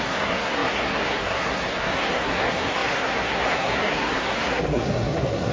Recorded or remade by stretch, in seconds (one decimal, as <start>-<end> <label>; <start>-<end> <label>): 0.0-5.5 remade